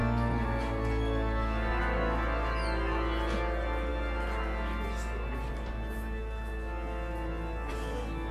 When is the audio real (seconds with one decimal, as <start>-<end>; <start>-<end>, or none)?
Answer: 0.0-8.3